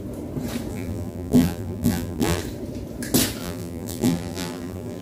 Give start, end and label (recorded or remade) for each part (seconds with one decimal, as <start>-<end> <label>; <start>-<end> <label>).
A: 0.0-0.7 recorded; 0.7-2.4 remade; 2.4-3.4 recorded; 3.4-5.0 remade